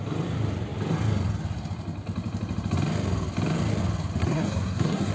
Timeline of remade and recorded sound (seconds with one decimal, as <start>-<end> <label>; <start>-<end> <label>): 0.0-4.2 recorded; 4.2-5.1 remade